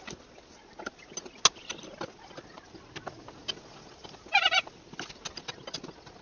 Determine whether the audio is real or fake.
real